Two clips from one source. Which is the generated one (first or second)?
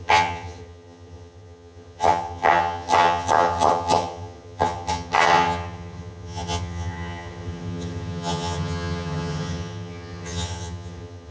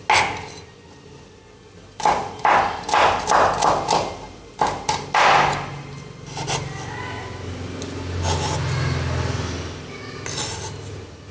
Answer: first